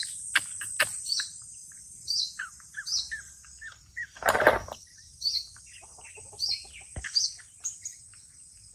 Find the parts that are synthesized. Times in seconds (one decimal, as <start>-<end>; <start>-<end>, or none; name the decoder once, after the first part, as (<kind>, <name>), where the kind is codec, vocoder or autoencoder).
1.8-6.0 (vocoder, BigVGAN v2)